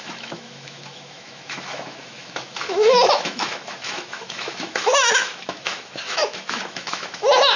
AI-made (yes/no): yes